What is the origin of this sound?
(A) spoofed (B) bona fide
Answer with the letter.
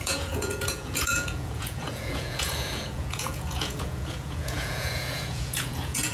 A